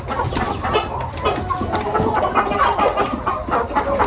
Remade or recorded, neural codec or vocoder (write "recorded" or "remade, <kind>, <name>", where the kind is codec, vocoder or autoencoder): recorded